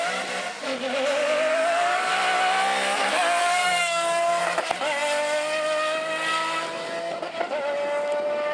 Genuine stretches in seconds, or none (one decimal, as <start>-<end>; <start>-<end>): 0.0-1.5; 2.1-3.4; 4.4-8.5